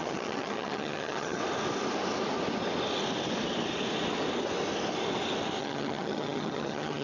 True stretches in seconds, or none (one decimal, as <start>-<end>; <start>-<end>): 1.4-5.6